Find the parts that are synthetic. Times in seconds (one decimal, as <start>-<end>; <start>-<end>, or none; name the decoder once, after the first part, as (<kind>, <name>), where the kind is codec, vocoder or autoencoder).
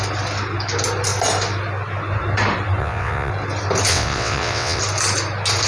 2.8-3.3 (vocoder, WaveNeXt); 3.9-4.8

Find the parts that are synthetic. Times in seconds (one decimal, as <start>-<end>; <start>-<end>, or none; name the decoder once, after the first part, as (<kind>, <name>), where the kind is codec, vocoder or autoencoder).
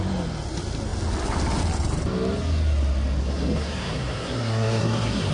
3.2-5.3 (codec, SNAC)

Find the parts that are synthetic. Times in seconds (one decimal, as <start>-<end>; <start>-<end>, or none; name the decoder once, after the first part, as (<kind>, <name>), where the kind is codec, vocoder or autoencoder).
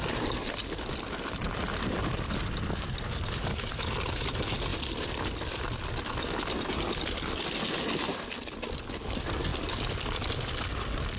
4.7-7.3 (vocoder, BigVGAN v2)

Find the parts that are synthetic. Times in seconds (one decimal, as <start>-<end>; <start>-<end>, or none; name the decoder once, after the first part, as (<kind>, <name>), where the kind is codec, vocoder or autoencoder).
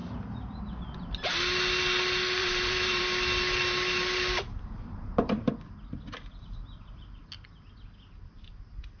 0.0-0.6 (vocoder, BigVGAN v2); 2.4-3.0; 4.5-5.5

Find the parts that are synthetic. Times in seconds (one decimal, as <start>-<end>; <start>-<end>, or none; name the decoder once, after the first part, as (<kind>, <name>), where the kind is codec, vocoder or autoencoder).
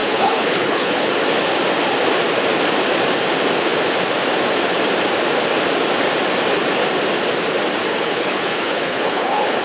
0.0-1.1 (codec, HILCodec); 7.9-9.6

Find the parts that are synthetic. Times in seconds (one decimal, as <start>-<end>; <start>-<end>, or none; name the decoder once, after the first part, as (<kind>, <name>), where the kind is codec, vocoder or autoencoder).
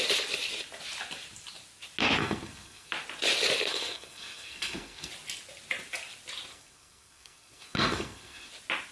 2.2-2.9 (codec, SNAC); 3.7-5.1; 6.5-8.5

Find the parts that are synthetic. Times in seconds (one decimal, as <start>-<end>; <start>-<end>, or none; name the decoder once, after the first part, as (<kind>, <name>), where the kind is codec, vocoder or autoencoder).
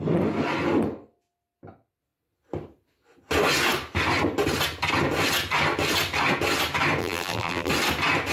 7.0-7.7 (vocoder, BigVGAN v2)